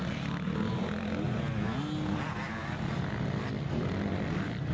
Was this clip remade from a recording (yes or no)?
no